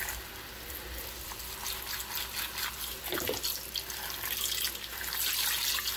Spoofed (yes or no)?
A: no